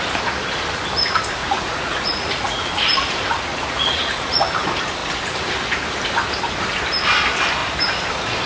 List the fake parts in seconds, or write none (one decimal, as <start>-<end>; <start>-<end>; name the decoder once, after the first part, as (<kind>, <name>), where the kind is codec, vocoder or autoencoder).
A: 1.4-2.7 (vocoder, Vocos); 3.5-4.4